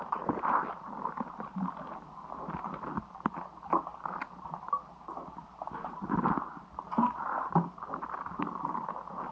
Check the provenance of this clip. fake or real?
real